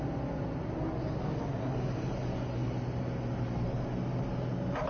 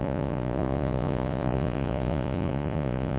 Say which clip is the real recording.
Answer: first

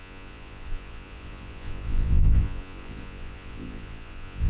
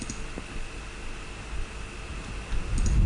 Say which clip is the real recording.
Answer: second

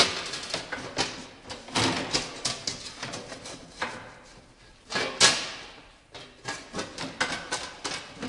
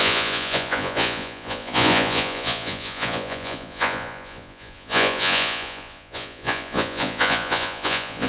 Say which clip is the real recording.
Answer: first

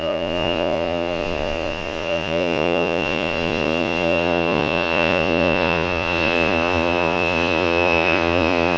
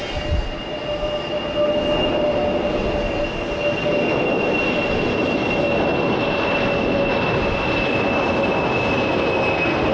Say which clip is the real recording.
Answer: second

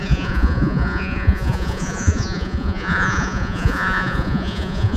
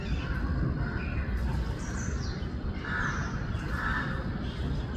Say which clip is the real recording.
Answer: second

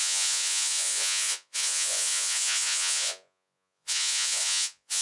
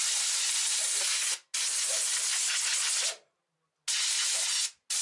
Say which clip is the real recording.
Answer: second